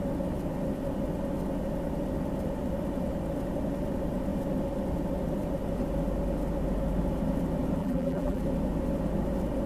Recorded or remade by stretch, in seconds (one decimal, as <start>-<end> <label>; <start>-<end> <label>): 0.0-7.8 recorded; 7.8-8.4 remade; 8.4-9.7 recorded

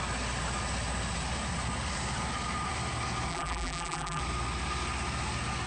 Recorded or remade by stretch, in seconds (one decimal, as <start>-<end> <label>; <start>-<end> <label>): 0.0-3.3 recorded; 3.3-4.2 remade; 4.2-5.7 recorded

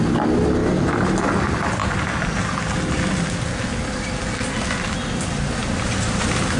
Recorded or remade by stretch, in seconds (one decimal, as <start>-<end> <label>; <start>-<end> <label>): 0.0-1.8 recorded; 1.8-4.9 remade; 4.9-5.6 recorded; 5.6-6.6 remade

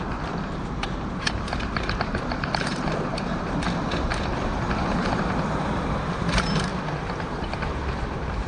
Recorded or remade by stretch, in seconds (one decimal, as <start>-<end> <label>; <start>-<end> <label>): 0.0-6.7 remade; 6.7-7.2 recorded; 7.2-8.5 remade

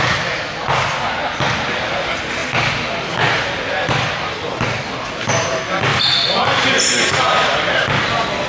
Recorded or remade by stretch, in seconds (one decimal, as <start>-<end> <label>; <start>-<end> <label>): 0.0-5.9 recorded; 5.9-7.3 remade; 7.3-8.5 recorded

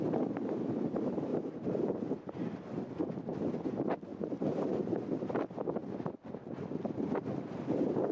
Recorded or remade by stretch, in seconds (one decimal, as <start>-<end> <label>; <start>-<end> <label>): 0.0-1.3 recorded; 1.3-2.8 remade; 2.8-8.1 recorded

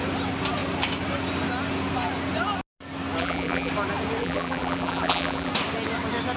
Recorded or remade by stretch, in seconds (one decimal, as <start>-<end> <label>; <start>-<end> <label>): 0.0-3.2 recorded; 3.2-3.7 remade; 3.7-4.2 recorded; 4.2-5.5 remade; 5.5-6.4 recorded